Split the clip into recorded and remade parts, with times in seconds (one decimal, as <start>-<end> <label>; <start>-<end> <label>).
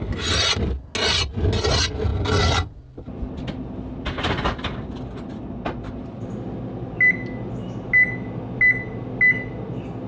0.0-10.1 recorded